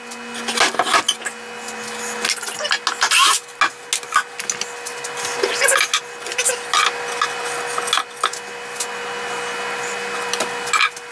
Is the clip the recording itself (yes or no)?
yes